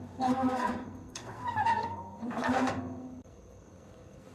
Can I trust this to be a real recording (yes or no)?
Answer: no